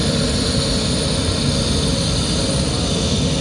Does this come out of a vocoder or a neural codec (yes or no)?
no